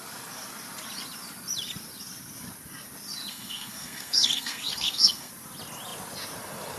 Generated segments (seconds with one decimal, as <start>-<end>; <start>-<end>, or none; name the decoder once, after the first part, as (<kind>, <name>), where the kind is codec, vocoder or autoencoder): 3.3-5.3 (codec, SNAC)